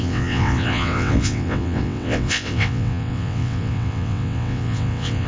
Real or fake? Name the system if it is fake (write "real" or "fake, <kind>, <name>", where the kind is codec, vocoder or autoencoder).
fake, vocoder, WaveNeXt